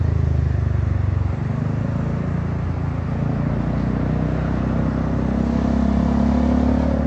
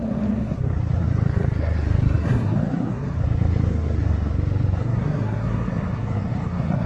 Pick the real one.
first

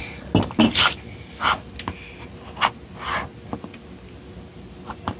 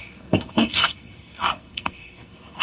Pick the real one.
first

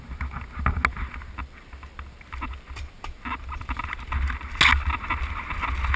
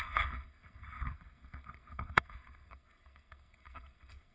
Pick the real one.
first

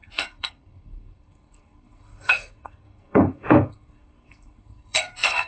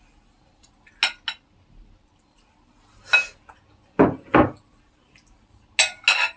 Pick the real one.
second